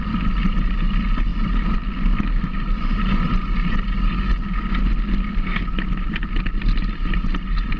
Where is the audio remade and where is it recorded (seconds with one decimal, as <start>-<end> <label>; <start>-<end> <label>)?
0.0-7.8 recorded

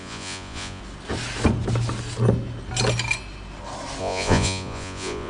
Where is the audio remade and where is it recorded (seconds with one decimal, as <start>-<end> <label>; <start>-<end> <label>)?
0.0-0.8 remade; 0.8-4.0 recorded; 4.0-5.3 remade

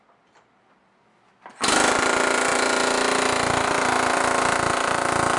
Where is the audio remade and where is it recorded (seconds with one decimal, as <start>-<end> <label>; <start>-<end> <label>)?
0.0-5.4 recorded